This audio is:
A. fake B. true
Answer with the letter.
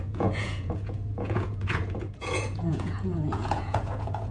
A